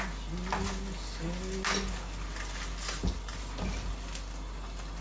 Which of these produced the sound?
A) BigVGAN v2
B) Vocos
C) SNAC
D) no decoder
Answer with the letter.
D